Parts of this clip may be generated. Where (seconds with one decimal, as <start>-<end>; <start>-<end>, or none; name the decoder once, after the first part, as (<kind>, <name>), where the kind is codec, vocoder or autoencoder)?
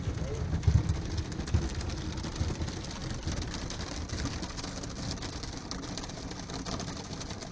none